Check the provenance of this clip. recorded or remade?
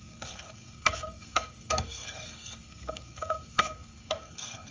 remade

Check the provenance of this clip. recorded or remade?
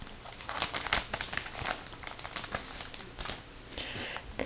recorded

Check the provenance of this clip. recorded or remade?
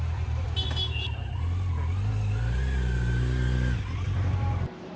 recorded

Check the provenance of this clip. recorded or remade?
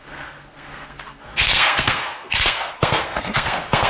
remade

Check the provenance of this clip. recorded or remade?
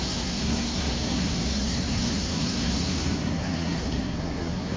remade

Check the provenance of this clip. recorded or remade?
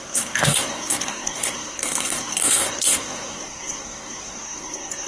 remade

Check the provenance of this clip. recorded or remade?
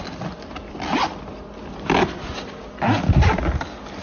recorded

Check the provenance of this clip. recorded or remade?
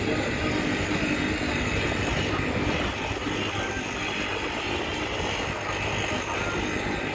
recorded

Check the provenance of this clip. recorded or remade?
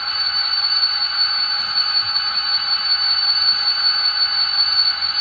recorded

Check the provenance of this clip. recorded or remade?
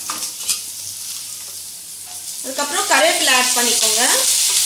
recorded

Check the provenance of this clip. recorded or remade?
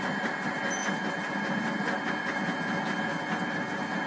recorded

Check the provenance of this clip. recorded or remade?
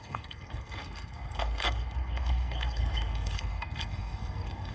remade